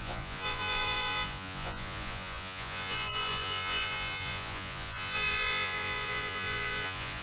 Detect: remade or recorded remade